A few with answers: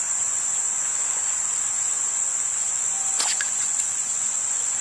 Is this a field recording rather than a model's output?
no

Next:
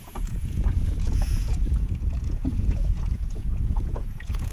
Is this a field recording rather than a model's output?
no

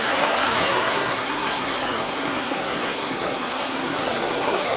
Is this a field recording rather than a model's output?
no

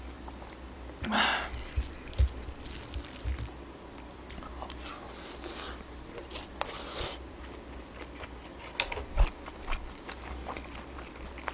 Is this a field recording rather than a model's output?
yes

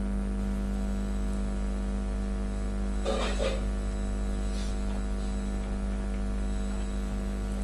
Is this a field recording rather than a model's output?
yes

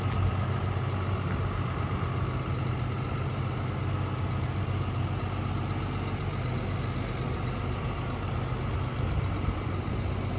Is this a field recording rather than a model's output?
yes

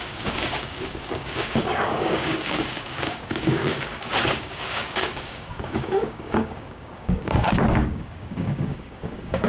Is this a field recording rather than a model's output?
no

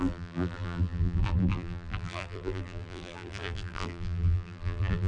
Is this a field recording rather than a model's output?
no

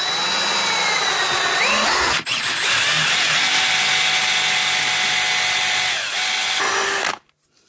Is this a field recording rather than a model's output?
yes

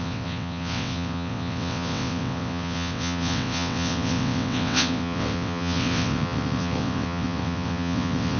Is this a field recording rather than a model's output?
no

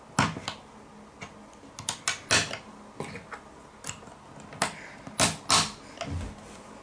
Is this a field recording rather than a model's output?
yes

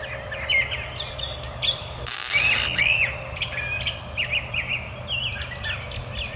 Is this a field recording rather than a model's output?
yes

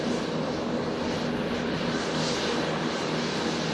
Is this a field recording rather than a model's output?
yes